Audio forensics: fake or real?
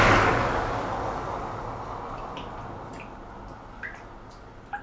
real